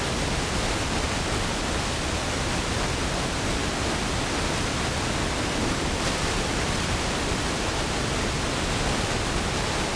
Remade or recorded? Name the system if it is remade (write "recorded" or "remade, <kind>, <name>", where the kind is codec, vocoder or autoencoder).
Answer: recorded